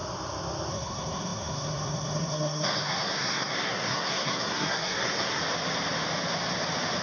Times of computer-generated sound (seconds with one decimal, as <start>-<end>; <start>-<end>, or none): 0.7-5.4